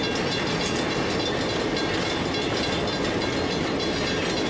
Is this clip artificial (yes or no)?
no